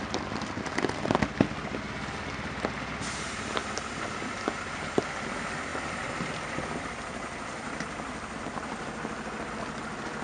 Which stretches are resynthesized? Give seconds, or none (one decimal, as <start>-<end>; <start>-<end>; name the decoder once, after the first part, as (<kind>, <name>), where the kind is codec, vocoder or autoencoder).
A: none